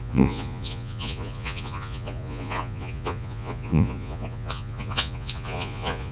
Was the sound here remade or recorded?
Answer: remade